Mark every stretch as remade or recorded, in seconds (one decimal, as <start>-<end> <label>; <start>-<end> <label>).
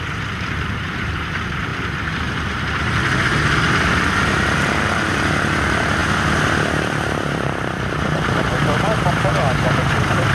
0.0-10.3 remade